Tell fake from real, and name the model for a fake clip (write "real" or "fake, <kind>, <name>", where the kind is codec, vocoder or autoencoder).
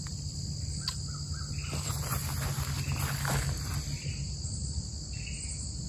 real